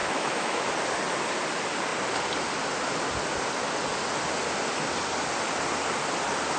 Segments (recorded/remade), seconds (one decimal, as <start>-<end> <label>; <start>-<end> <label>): 0.0-0.7 remade; 0.7-6.6 recorded